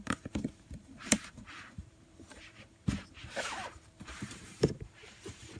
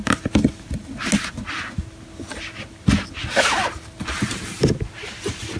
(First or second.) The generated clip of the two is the first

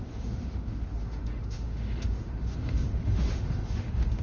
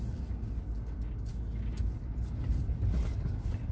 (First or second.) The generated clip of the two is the first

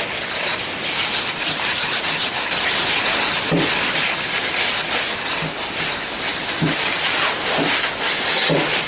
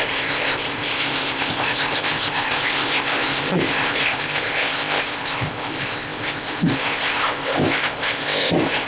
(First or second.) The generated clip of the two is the second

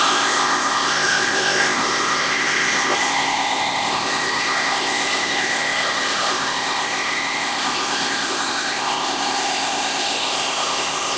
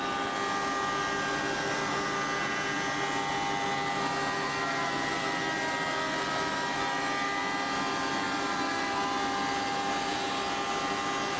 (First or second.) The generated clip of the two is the first